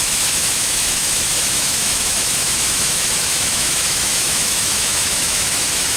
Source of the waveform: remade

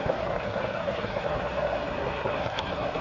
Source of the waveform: remade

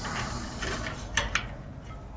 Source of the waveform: recorded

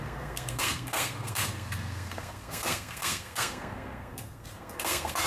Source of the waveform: remade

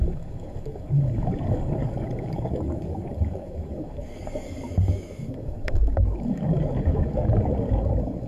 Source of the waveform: remade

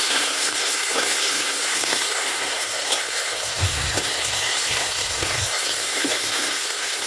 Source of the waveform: remade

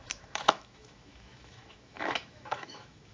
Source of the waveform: remade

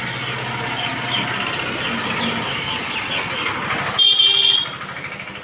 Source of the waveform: recorded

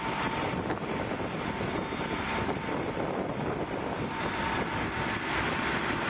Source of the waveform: recorded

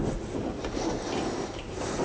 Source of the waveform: remade